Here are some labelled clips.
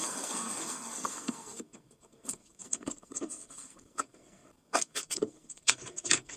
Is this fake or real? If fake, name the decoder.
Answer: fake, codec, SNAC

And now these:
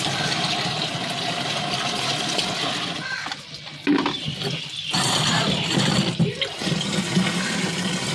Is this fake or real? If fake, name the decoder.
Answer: real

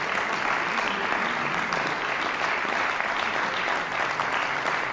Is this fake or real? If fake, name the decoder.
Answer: real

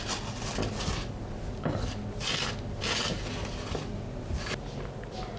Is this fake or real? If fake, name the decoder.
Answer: real